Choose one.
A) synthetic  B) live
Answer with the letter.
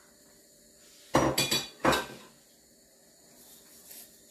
B